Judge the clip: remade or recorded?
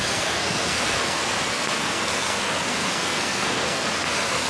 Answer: remade